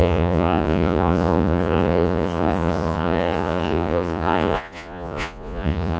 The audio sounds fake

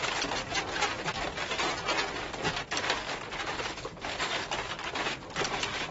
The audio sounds real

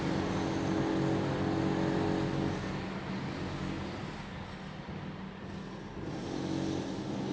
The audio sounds real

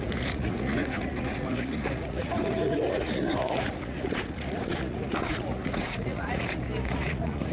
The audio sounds fake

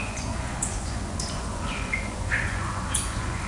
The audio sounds fake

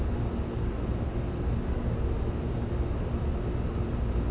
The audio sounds real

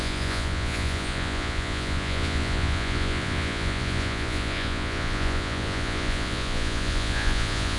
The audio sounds fake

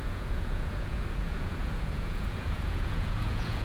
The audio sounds fake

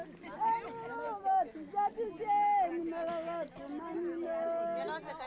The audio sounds real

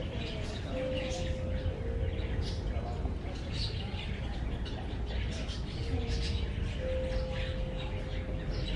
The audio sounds real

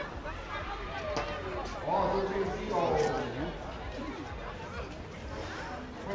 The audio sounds real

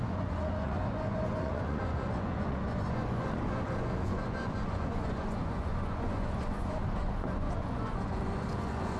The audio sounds fake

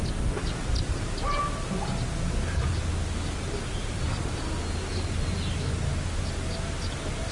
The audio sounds real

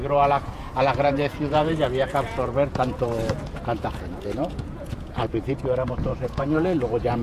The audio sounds fake